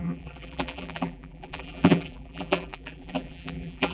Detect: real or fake fake